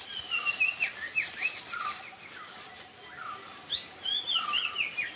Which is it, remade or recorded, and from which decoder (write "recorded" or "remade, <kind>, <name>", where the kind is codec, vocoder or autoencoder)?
recorded